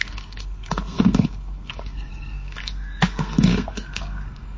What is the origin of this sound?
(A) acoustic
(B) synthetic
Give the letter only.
B